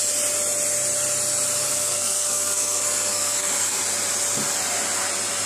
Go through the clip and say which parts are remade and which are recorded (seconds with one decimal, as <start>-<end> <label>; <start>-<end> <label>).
0.0-1.7 recorded; 1.7-3.8 remade; 3.8-5.5 recorded